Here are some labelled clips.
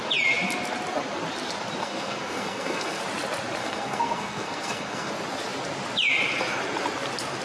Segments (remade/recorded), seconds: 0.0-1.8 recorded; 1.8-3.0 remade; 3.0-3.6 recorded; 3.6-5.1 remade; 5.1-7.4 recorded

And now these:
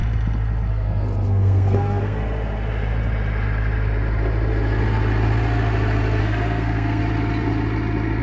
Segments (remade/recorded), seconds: 0.0-0.7 recorded; 0.7-2.2 remade; 2.2-6.2 recorded; 6.2-7.0 remade; 7.0-8.2 recorded

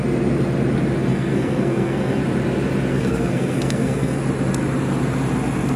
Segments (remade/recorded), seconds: 0.0-1.1 recorded; 1.1-2.2 remade; 2.2-2.9 recorded; 2.9-4.2 remade; 4.2-5.8 recorded

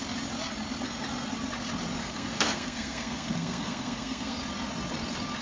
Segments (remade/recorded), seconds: 0.0-2.0 recorded; 2.0-4.4 remade; 4.4-5.4 recorded

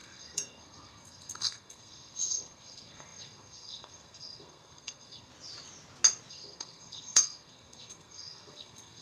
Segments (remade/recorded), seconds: 0.0-5.3 remade; 5.3-6.3 recorded; 6.3-9.0 remade

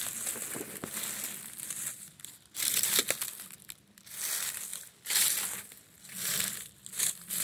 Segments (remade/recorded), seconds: 0.0-7.4 recorded

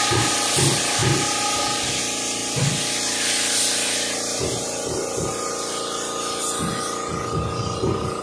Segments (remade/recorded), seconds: 0.0-8.2 recorded